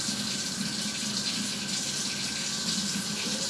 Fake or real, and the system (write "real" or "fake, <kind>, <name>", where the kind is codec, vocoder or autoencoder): real